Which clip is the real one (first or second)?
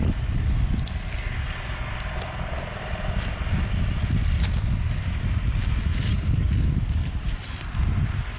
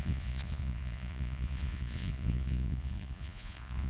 first